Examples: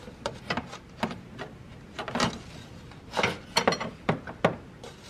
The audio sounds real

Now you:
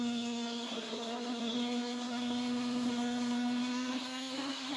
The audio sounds fake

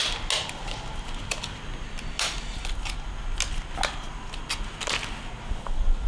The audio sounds real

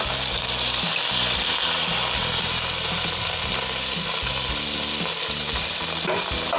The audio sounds real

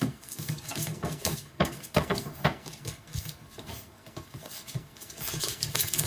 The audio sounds fake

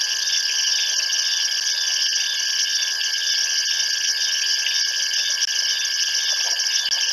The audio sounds real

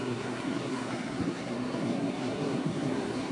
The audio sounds fake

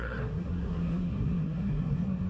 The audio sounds fake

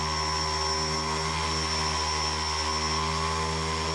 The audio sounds real